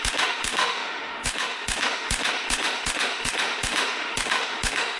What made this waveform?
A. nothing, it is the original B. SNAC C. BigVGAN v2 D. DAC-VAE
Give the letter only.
D